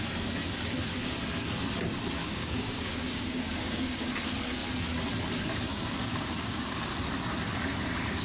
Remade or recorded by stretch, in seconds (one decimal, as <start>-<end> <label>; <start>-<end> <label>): 0.0-2.2 recorded; 2.2-4.1 remade; 4.1-5.7 recorded; 5.7-6.9 remade; 6.9-8.2 recorded